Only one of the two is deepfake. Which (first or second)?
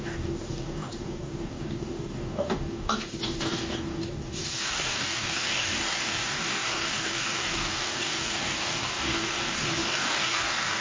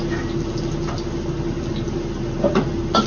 first